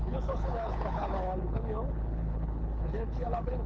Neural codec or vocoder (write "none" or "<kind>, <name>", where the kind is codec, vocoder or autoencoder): codec, HILCodec